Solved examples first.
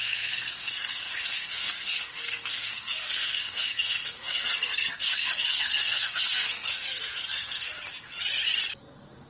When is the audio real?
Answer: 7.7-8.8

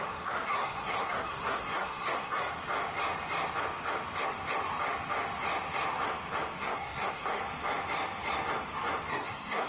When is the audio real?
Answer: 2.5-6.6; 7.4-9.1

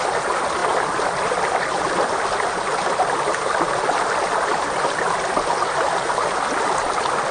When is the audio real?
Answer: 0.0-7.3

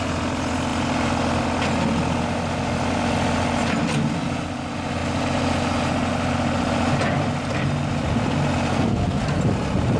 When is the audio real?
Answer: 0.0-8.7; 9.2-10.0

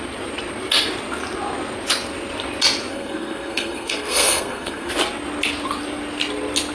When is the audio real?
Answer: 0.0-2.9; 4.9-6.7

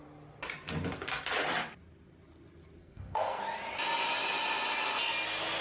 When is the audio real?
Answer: 0.0-2.8; 3.4-5.6